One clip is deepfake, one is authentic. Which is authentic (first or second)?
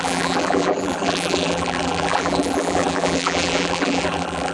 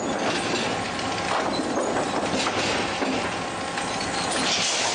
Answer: second